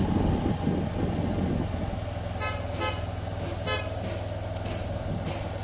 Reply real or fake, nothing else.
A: real